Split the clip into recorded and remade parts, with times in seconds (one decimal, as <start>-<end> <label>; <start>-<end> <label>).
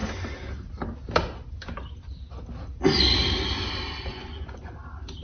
0.0-4.1 recorded; 4.1-4.7 remade; 4.7-5.2 recorded